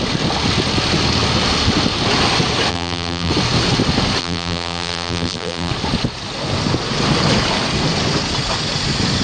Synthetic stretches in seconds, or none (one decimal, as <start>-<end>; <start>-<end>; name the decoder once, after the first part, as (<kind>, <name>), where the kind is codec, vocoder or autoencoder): 2.7-3.3 (vocoder, BigVGAN v2); 4.2-5.7